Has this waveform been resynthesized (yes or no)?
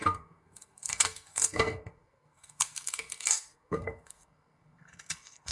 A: yes